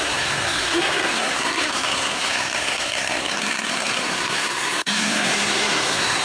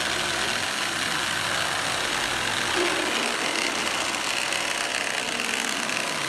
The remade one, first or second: first